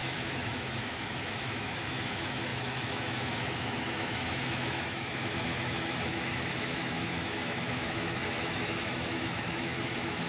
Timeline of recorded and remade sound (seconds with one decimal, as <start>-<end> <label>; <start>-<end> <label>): 0.0-10.3 remade